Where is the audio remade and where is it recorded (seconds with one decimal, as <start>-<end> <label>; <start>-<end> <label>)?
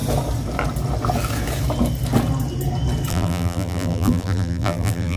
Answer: 0.0-3.1 recorded; 3.1-5.2 remade